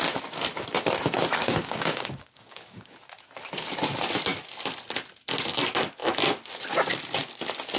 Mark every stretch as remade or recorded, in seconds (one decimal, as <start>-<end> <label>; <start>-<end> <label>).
0.0-1.4 recorded; 1.4-2.9 remade; 2.9-7.8 recorded

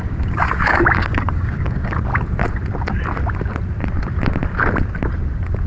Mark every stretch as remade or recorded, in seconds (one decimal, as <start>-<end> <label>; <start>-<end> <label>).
0.0-2.1 remade; 2.1-5.7 recorded